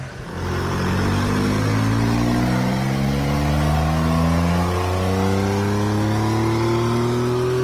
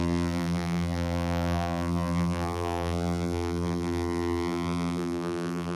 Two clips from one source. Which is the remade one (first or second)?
second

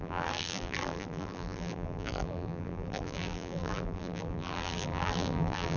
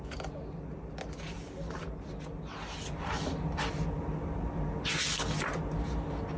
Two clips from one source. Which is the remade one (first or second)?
first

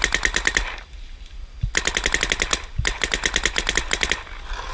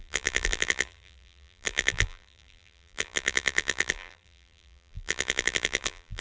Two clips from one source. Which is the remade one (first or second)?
second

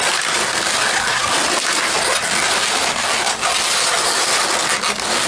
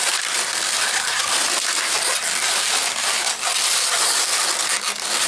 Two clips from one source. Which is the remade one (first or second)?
second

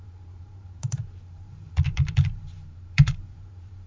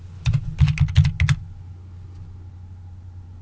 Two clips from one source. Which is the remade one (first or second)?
first